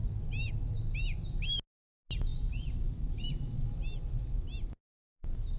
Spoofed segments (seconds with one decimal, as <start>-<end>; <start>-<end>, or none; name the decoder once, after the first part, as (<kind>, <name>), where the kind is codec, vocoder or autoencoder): 2.3-3.3 (vocoder, BigVGAN v2)